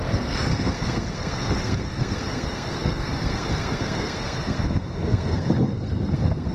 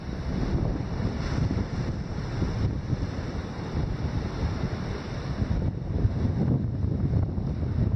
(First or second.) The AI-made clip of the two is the first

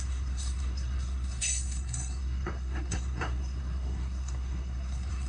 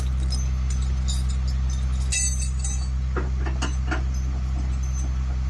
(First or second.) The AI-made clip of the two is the first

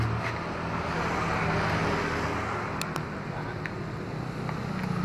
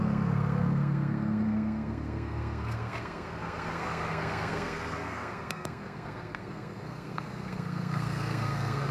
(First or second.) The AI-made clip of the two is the second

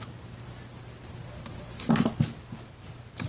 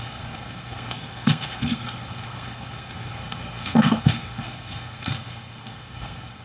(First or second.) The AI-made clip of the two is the second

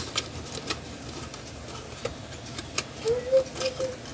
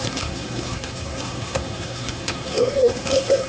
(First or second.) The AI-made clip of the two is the second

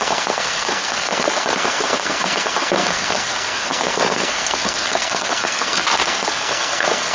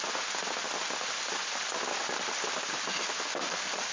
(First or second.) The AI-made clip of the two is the first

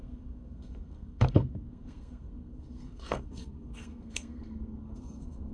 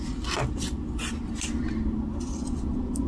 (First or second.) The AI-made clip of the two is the first